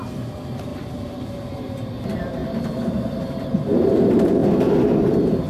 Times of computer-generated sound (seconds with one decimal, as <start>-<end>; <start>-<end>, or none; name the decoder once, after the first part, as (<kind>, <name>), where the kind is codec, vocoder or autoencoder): 0.0-2.4 (vocoder, BigVGAN v2); 3.4-4.4; 5.0-5.5